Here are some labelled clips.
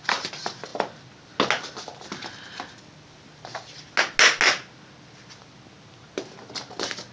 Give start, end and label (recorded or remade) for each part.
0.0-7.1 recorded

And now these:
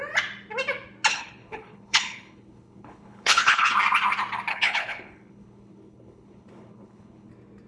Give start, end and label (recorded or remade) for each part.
0.0-1.1 recorded; 1.1-3.7 remade; 3.7-4.5 recorded; 4.5-7.3 remade; 7.3-7.7 recorded

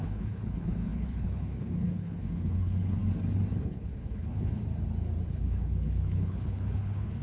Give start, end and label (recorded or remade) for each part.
0.0-3.0 remade; 3.0-3.6 recorded; 3.6-4.6 remade; 4.6-5.3 recorded; 5.3-7.2 remade

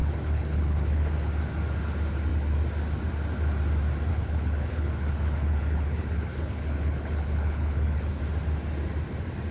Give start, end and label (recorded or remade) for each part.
0.0-1.1 remade; 1.1-4.1 recorded; 4.1-8.2 remade; 8.2-9.5 recorded

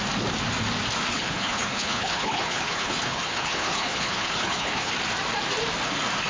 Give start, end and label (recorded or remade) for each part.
0.0-1.1 recorded; 1.1-4.9 remade; 4.9-6.3 recorded

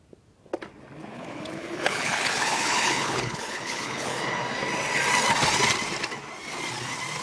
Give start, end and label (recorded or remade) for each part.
0.0-1.1 recorded; 1.1-4.2 remade; 4.2-7.2 recorded

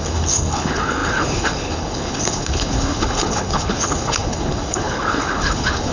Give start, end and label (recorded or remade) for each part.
0.0-5.9 remade

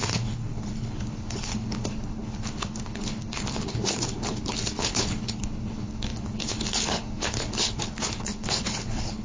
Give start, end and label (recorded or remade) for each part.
0.0-9.2 remade